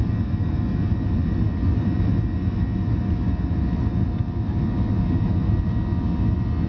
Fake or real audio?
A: real